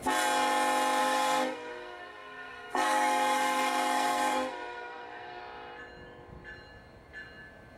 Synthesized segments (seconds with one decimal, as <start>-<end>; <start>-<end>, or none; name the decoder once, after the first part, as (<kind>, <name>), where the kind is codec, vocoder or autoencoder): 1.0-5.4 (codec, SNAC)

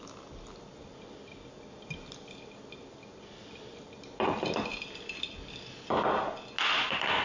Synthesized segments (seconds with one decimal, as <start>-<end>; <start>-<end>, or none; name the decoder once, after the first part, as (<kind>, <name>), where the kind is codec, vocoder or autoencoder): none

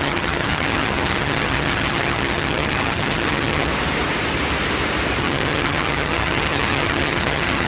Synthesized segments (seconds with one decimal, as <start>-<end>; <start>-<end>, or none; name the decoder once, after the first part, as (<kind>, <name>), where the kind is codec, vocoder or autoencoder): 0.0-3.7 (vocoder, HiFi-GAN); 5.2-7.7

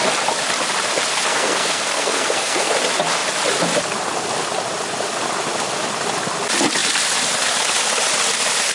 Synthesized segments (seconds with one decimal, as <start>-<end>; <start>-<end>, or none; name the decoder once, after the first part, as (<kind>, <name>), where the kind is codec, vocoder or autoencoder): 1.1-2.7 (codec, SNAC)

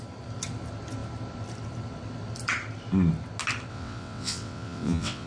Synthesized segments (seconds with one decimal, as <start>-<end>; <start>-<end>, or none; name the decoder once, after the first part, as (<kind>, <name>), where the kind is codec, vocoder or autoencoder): 3.7-5.3 (vocoder, WaveNeXt)

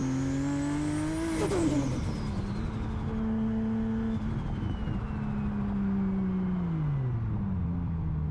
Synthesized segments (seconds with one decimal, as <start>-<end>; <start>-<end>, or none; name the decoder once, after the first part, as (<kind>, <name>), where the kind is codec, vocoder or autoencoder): none